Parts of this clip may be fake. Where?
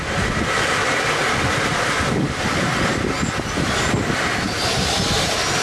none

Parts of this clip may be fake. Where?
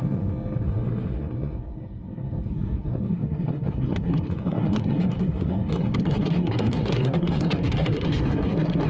0.0-8.9 (codec, SNAC)